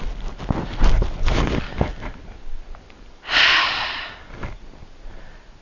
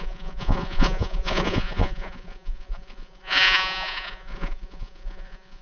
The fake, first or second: second